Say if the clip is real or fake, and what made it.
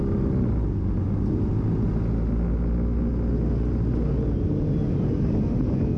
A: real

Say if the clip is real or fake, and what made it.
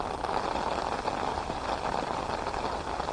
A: fake, vocoder, BigVGAN v2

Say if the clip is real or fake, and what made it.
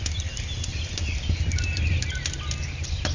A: real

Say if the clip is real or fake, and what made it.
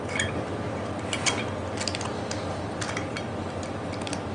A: real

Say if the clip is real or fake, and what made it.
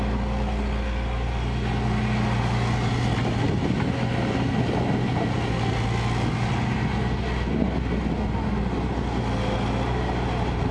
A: real